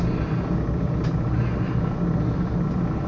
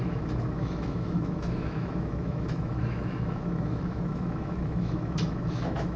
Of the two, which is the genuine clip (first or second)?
first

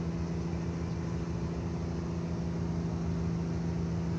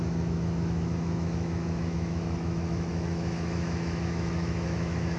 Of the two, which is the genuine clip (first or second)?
first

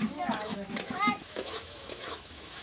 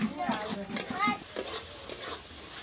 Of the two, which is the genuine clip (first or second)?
second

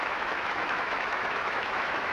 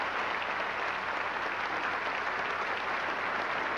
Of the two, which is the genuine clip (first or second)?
second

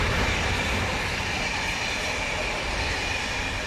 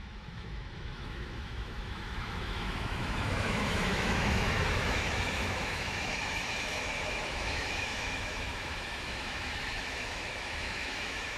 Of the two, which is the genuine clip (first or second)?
first